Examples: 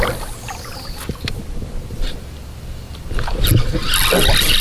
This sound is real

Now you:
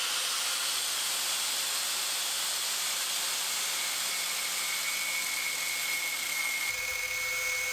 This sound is real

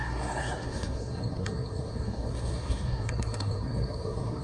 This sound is fake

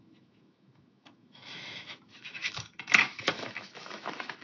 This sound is fake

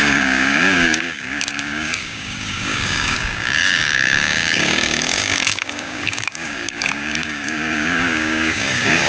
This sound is fake